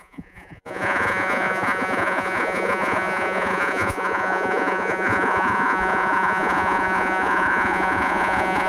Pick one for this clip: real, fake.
fake